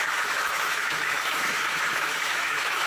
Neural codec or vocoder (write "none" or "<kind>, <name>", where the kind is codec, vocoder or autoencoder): autoencoder, DAC-VAE